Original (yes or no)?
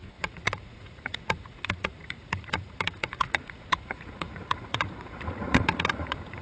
no